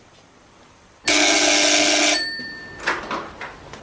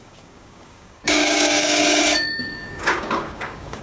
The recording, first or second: first